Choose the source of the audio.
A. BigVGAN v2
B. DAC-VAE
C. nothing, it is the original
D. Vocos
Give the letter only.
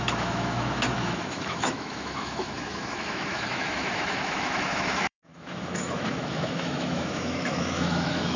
B